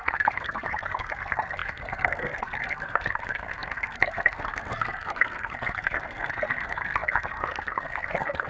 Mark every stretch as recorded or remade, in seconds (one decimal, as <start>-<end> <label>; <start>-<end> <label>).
0.0-8.5 remade